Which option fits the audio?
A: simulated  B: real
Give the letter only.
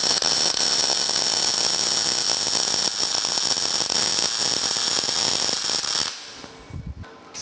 B